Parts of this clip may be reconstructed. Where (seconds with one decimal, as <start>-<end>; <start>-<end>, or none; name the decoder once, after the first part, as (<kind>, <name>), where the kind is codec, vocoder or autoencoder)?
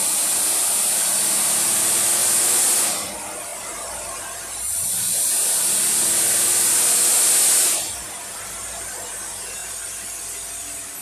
2.2-2.9 (vocoder, BigVGAN v2); 3.5-4.2